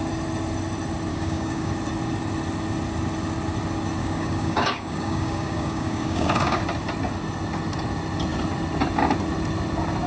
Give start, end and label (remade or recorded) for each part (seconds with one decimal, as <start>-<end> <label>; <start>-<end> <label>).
0.0-1.1 recorded; 1.1-1.7 remade; 1.7-4.0 recorded; 4.0-6.6 remade; 6.6-10.1 recorded